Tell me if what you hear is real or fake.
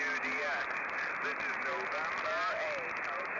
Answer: real